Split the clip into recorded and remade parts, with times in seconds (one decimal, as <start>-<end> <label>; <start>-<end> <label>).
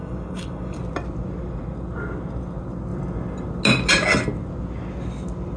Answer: 0.0-0.8 remade; 0.8-5.6 recorded